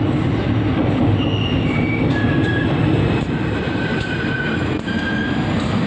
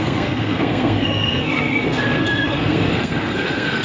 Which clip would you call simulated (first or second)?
second